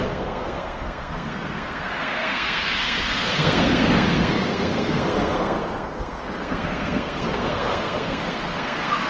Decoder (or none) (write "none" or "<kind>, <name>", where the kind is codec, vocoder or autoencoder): codec, SNAC